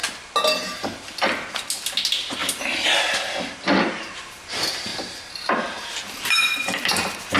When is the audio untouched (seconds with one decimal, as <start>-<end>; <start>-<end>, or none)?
0.0-7.4